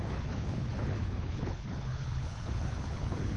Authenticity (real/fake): fake